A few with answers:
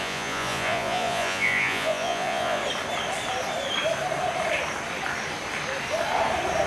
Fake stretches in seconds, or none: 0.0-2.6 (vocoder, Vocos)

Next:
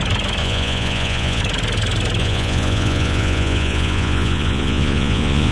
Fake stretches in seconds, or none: 0.4-1.4 (vocoder, Vocos); 2.2-5.5